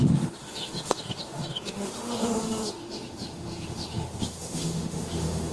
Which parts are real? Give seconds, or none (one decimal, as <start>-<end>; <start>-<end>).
none